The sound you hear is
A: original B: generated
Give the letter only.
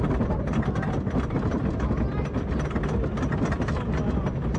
A